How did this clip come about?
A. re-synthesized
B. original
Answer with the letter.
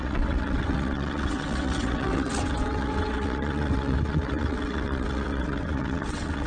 A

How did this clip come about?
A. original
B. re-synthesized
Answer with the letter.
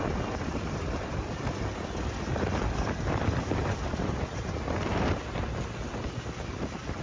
B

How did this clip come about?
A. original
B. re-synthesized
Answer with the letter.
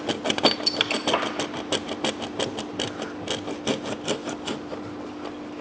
A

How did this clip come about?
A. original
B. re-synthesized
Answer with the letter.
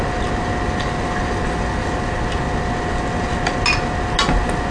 A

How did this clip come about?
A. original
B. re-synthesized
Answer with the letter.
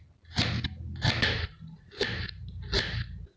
A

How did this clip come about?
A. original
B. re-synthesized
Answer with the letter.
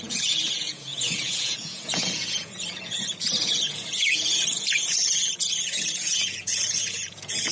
B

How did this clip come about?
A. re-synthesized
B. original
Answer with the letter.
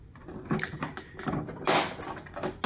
B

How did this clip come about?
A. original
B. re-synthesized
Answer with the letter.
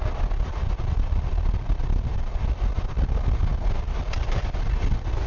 A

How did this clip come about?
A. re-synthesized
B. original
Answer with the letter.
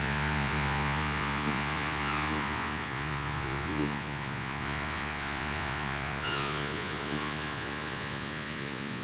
A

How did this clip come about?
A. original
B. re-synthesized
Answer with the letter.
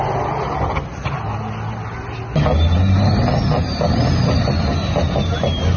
A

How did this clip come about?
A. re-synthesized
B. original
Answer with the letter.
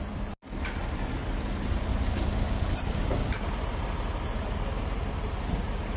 A